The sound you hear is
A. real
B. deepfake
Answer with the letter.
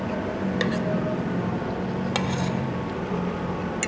A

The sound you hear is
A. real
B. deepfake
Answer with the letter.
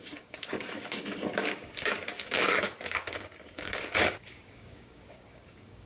B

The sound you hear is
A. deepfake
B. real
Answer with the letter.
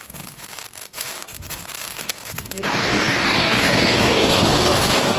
A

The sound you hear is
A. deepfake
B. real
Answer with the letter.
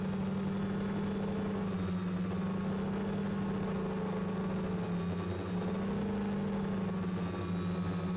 B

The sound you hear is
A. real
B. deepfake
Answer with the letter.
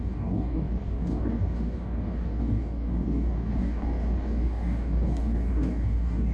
B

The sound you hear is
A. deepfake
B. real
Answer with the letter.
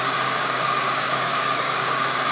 A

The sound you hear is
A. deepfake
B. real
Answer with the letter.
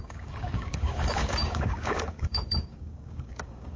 A